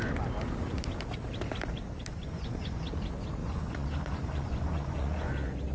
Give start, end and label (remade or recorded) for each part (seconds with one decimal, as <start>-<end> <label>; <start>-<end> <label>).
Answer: 0.0-2.1 recorded; 2.1-2.9 remade; 2.9-3.4 recorded; 3.4-5.3 remade; 5.3-5.7 recorded